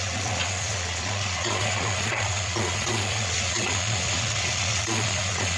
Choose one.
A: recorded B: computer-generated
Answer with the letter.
B